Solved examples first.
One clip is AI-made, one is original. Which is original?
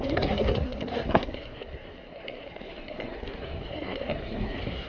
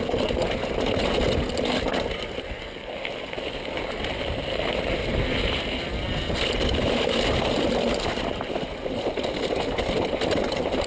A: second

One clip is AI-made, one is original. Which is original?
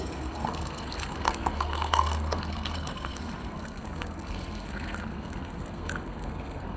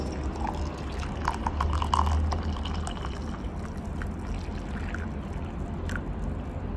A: second